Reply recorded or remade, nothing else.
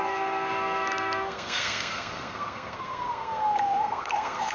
remade